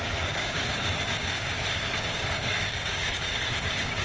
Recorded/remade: remade